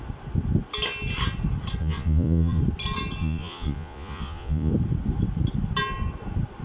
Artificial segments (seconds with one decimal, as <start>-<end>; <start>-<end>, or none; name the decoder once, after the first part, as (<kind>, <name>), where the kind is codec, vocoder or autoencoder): 1.8-2.6 (vocoder, Vocos); 3.2-4.7